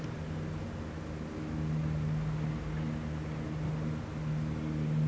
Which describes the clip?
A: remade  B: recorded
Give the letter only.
B